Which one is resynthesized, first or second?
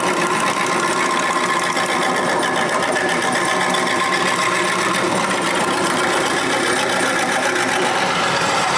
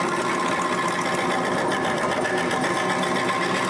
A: first